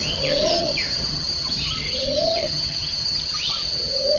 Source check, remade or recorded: remade